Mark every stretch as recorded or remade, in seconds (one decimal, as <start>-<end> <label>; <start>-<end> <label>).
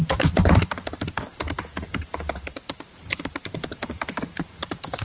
0.0-5.0 remade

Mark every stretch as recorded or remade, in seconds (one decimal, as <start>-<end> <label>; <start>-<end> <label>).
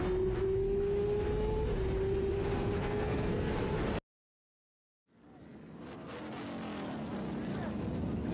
0.0-2.8 recorded; 2.8-3.5 remade; 3.5-8.3 recorded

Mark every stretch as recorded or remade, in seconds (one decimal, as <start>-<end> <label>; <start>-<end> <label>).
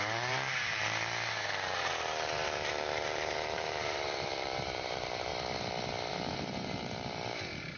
0.0-5.3 remade; 5.3-6.1 recorded; 6.1-7.8 remade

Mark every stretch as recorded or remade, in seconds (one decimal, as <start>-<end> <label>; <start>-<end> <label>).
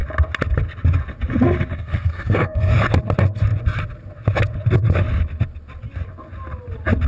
0.0-1.7 recorded; 1.7-2.7 remade; 2.7-7.1 recorded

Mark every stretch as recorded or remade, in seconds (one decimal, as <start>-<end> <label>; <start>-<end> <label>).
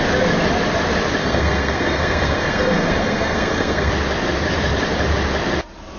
0.0-1.2 recorded; 1.2-3.9 remade; 3.9-6.0 recorded